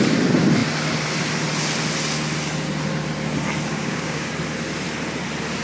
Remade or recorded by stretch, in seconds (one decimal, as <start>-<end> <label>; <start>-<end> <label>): 0.0-3.7 recorded; 3.7-4.3 remade; 4.3-5.6 recorded